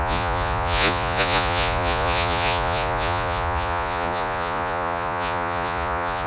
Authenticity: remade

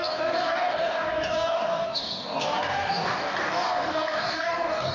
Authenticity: remade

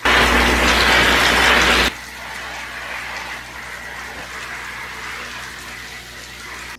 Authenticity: recorded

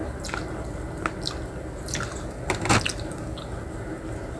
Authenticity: recorded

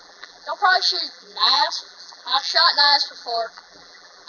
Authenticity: remade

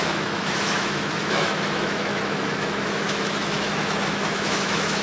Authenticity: remade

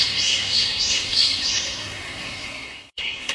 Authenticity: remade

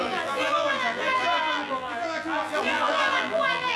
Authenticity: remade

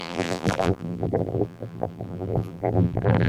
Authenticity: remade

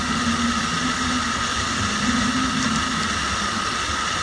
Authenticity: recorded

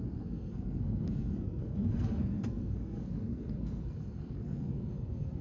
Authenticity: remade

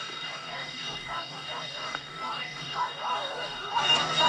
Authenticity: remade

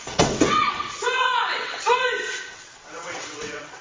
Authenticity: remade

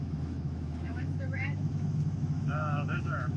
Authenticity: remade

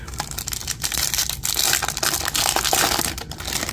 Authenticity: recorded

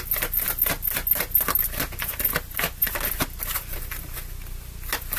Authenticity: recorded